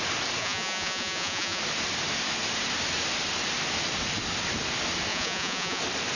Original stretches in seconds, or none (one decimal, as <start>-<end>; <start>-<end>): 0.0-0.4; 1.6-5.1; 5.8-6.2